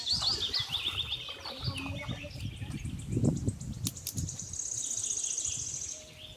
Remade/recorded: recorded